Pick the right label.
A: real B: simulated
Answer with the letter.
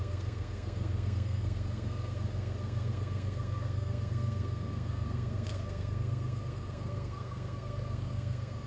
B